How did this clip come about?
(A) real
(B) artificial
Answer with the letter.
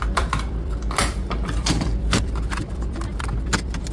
B